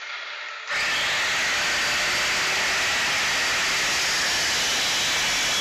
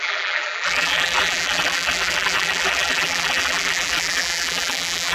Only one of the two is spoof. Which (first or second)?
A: second